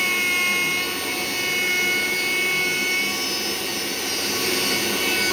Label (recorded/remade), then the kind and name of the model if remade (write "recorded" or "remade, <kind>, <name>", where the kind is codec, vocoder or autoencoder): recorded